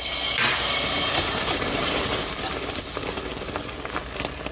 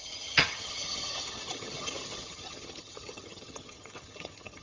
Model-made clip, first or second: second